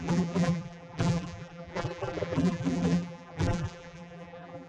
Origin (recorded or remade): remade